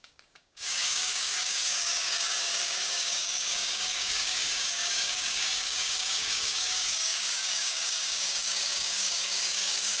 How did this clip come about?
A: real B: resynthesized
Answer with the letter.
B